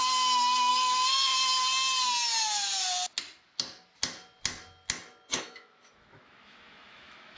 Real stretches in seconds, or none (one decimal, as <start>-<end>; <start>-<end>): 0.0-0.7; 1.3-5.4